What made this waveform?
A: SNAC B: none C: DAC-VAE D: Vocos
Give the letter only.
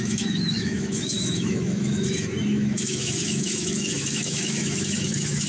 C